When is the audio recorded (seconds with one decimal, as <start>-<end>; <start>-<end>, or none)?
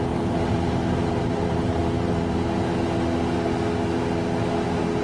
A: 1.8-5.0